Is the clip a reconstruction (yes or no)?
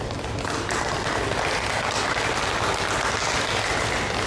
no